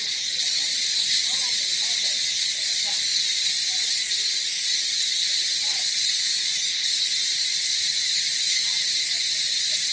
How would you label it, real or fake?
real